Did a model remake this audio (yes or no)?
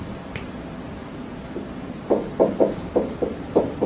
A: yes